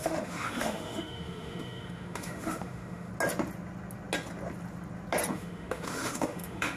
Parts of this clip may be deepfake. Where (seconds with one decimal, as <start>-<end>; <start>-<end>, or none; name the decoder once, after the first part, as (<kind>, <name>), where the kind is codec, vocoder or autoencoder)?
0.0-3.1 (autoencoder, DAC-VAE); 5.3-6.8